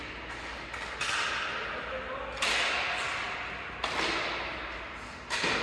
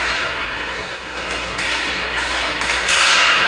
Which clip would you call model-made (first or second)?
second